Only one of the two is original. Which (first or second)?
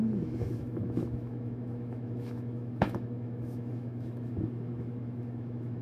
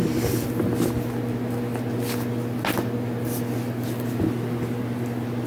second